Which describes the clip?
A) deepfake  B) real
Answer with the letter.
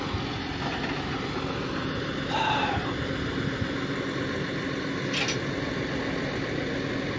B